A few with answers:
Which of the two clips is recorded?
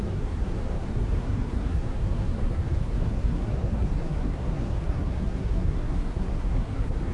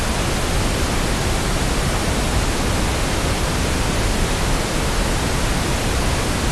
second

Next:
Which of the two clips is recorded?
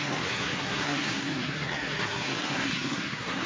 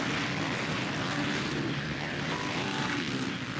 second